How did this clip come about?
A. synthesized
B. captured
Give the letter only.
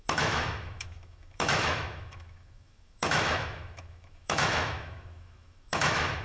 A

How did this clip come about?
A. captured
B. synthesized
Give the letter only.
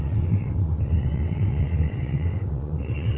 B